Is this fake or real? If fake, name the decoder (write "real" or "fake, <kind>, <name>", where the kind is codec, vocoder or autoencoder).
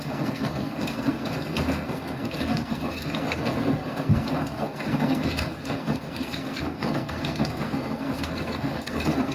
fake, codec, SNAC